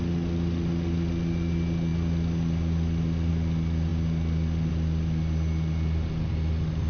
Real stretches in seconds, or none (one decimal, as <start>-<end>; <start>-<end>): 0.0-6.9